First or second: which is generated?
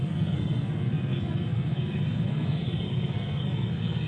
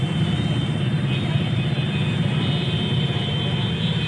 first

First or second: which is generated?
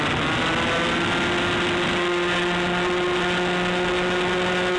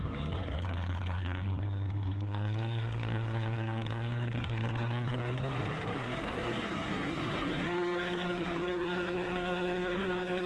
second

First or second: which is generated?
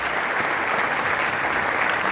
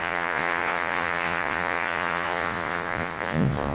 second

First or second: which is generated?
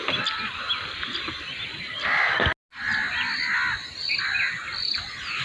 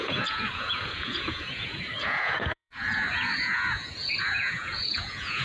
second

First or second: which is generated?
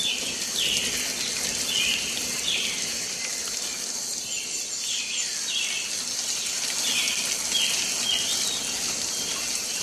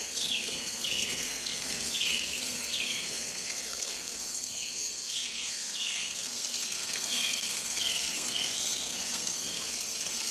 second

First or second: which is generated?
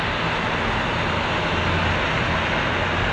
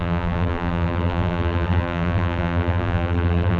second